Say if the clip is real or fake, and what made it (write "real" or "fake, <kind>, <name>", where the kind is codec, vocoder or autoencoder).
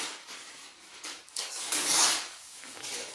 fake, codec, DAC